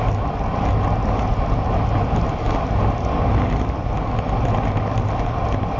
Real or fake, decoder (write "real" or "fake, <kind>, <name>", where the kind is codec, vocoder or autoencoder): real